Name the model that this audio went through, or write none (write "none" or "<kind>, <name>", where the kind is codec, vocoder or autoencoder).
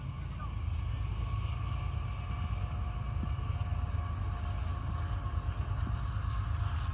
none